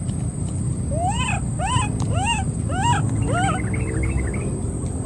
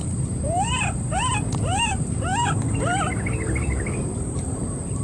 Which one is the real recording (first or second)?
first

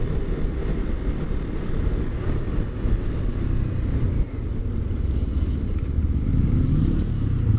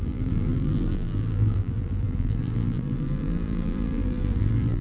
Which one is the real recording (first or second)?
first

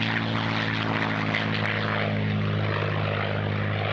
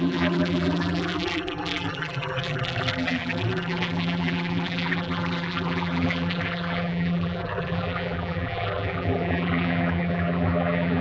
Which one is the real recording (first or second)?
first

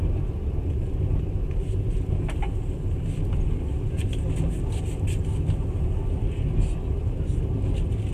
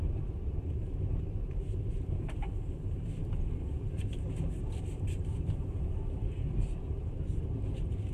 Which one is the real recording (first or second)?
first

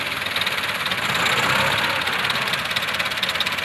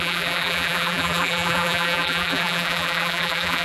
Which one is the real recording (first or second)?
first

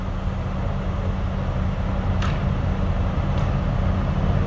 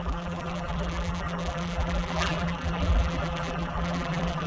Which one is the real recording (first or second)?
first